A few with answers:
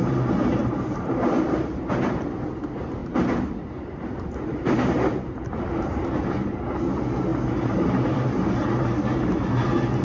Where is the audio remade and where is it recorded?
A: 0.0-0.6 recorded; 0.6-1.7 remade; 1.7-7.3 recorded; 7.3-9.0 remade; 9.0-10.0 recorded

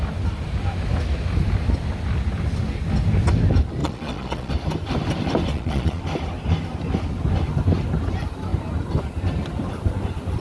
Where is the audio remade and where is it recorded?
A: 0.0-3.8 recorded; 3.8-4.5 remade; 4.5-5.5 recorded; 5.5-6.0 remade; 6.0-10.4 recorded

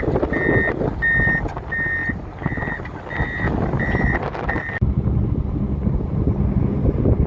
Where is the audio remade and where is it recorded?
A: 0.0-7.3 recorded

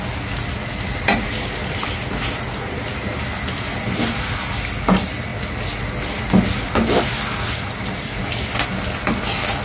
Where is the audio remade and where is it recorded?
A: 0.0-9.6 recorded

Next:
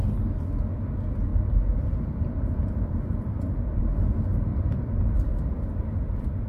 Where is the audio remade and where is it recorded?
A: 0.0-1.3 recorded; 1.3-3.8 remade; 3.8-4.5 recorded; 4.5-6.5 remade

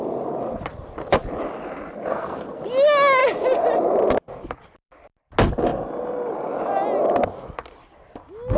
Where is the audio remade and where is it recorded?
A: 0.0-2.1 recorded; 2.1-2.6 remade; 2.6-8.6 recorded